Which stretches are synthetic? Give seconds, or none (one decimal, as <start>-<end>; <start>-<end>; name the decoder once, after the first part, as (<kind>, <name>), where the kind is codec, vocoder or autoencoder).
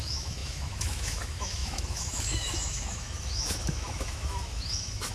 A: 0.0-5.1 (autoencoder, DAC-VAE)